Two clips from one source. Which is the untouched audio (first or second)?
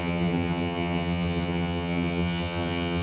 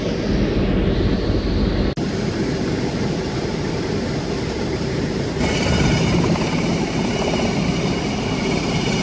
second